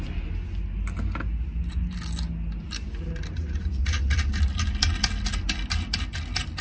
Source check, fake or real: real